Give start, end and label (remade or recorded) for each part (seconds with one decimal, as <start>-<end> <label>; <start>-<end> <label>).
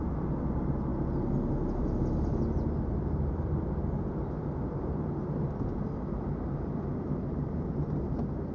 0.0-8.5 recorded